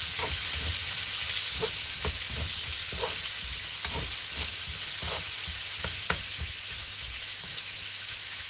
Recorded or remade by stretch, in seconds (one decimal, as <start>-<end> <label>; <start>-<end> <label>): 0.0-5.8 recorded; 5.8-8.5 remade